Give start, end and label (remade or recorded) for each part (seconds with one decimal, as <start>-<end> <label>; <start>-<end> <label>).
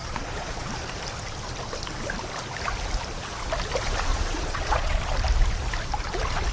0.0-0.7 remade; 0.7-4.1 recorded; 4.1-5.0 remade; 5.0-6.5 recorded